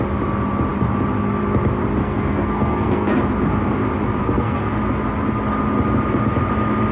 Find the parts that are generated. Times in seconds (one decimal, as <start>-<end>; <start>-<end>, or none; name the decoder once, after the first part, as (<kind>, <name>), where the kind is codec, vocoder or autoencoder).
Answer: 2.0-3.2 (codec, SNAC); 4.2-4.8